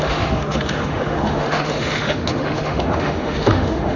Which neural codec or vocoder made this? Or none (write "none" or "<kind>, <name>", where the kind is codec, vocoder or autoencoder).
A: autoencoder, DAC-VAE